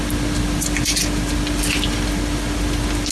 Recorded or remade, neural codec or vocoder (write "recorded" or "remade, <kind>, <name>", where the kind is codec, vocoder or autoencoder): recorded